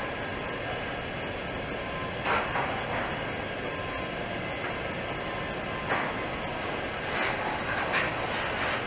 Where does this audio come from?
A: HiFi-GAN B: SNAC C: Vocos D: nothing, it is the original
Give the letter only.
D